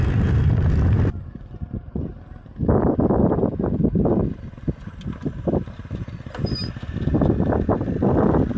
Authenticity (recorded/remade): recorded